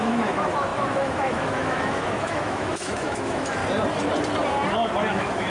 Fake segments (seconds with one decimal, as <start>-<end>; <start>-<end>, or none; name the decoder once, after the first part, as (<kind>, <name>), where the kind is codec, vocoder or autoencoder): 0.0-3.6 (autoencoder, DAC-VAE); 5.1-5.5